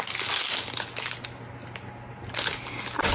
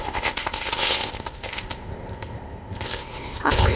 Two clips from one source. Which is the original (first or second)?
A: first